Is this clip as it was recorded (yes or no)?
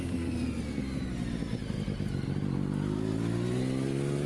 yes